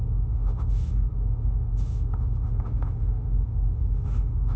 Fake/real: fake